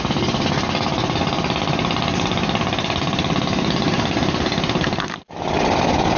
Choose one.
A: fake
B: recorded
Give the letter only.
B